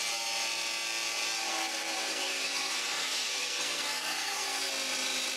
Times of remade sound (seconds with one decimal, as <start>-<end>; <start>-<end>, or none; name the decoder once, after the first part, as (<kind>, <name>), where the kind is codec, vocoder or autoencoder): 1.5-4.7 (codec, SNAC)